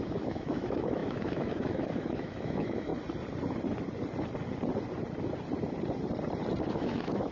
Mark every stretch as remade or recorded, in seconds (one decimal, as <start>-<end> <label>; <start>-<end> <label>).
0.0-2.9 remade; 2.9-6.7 recorded; 6.7-7.3 remade